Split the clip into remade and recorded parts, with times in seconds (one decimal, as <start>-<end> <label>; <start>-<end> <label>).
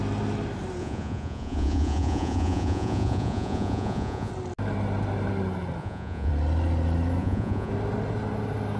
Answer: 0.0-0.8 recorded; 0.8-4.3 remade; 4.3-5.8 recorded; 5.8-6.3 remade; 6.3-7.2 recorded; 7.2-7.7 remade; 7.7-8.8 recorded